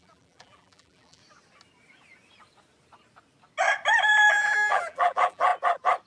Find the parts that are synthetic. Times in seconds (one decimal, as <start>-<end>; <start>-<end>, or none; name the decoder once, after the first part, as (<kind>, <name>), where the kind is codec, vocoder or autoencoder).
0.0-1.2 (vocoder, BigVGAN v2); 4.3-5.5